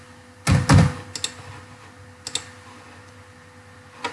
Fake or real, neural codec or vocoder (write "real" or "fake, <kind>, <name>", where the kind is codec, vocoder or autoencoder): real